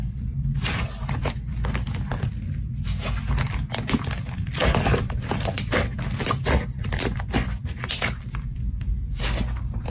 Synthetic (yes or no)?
no